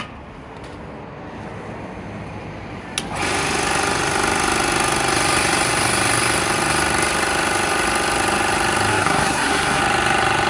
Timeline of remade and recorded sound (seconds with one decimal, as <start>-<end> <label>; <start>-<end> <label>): 0.0-8.9 recorded; 8.9-9.8 remade; 9.8-10.5 recorded